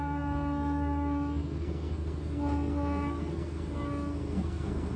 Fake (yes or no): yes